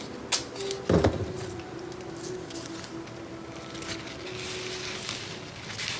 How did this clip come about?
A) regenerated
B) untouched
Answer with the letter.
B